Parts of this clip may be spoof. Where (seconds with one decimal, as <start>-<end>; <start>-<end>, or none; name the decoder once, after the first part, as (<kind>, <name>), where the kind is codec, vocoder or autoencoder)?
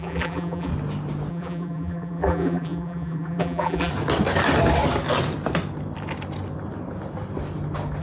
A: 0.0-0.7 (vocoder, BigVGAN v2); 1.3-3.9